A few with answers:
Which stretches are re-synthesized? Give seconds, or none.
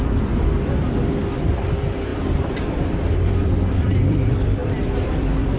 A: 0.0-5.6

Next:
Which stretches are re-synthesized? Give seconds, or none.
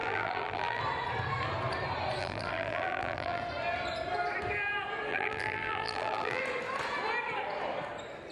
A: 0.0-0.8; 2.2-3.4; 5.1-6.4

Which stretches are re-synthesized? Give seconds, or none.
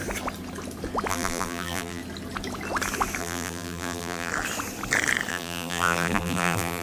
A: 1.1-2.0; 3.2-4.3; 5.3-6.8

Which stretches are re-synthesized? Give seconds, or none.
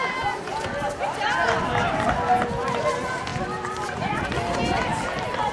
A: none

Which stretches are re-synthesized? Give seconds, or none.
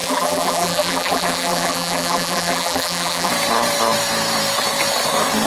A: 0.0-3.3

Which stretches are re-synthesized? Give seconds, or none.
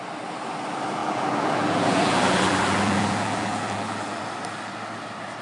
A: 1.0-4.2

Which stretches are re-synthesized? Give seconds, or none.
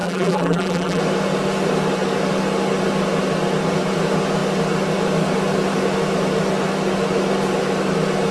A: 0.0-1.0